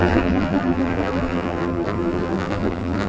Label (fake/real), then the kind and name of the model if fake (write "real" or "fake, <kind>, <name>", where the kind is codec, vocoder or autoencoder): fake, vocoder, BigVGAN v2